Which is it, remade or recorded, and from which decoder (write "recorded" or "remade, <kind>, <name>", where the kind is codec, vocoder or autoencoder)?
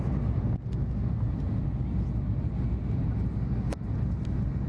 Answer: recorded